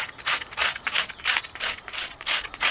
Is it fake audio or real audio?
real